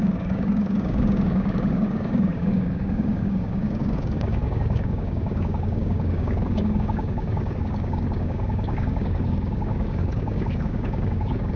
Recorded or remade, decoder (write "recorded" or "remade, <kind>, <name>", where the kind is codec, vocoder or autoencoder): remade, codec, DAC